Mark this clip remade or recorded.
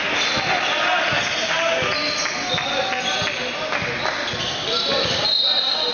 recorded